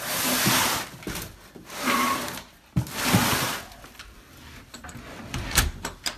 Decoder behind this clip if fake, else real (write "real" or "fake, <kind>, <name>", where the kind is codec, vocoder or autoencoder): fake, vocoder, BigVGAN v2